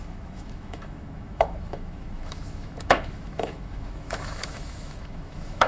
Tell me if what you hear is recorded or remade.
remade